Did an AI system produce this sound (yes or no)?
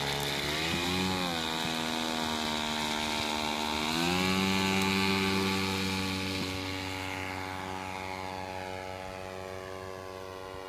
no